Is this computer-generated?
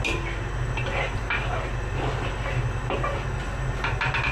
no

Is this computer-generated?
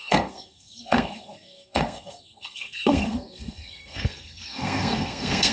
yes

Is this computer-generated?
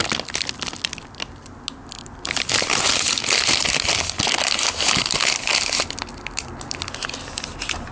no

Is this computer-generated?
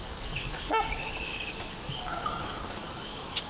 yes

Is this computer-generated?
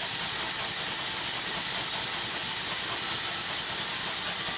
no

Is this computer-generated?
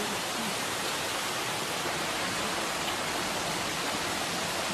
no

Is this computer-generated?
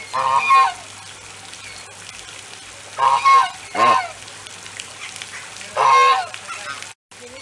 no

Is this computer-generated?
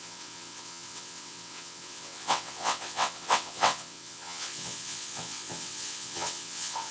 yes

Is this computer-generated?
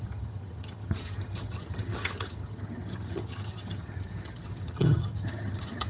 yes